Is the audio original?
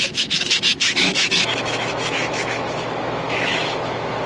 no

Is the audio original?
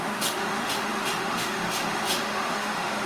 no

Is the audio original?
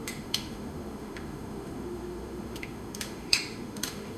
no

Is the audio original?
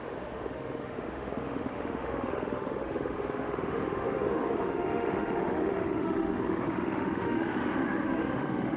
no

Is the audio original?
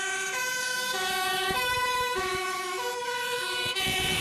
no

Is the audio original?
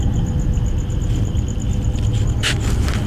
yes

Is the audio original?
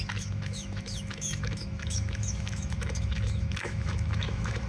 no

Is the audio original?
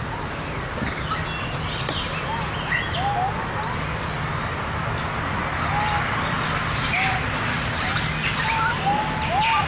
yes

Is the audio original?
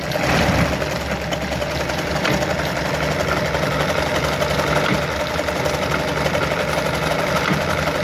yes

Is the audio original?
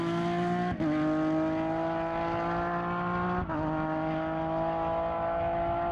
yes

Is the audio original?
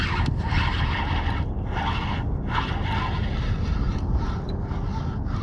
yes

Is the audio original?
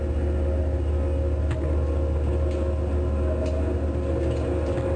yes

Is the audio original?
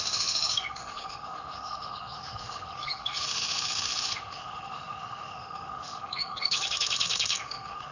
no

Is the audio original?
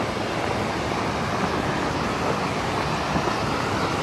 yes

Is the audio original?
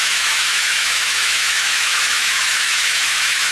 no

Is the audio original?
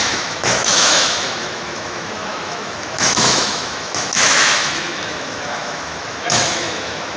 no